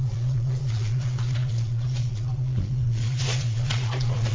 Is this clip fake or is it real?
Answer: fake